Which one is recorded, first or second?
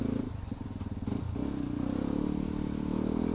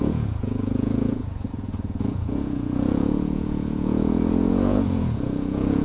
first